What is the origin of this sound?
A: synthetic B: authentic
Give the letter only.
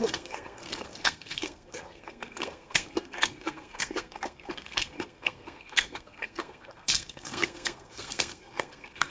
A